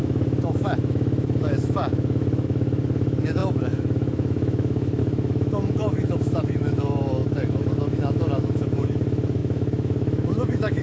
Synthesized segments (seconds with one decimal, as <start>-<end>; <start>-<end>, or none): 0.0-10.8

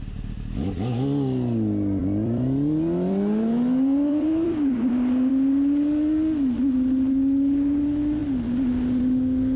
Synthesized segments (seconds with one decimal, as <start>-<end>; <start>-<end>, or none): 2.0-5.3

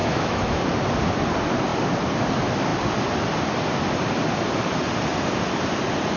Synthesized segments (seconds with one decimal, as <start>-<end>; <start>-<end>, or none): 0.0-0.6

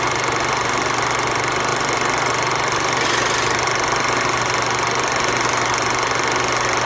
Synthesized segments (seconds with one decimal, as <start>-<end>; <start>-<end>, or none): none

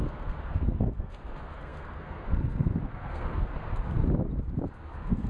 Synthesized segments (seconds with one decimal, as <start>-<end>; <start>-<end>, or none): 0.0-4.0; 4.7-5.3

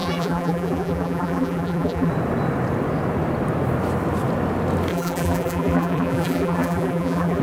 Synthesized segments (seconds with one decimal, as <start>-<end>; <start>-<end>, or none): 0.0-2.1; 4.9-7.4